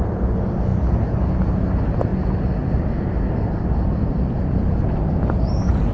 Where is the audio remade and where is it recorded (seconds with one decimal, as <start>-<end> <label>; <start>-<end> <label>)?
0.0-5.9 recorded